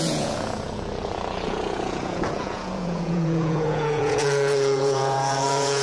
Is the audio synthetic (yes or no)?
yes